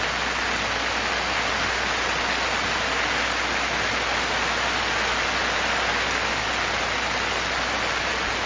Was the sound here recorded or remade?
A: recorded